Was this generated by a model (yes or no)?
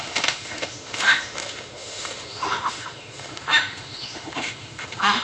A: yes